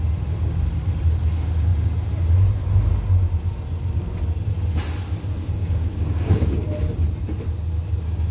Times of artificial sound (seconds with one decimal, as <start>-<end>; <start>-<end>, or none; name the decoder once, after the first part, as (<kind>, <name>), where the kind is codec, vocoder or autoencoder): 5.6-6.7 (codec, DAC)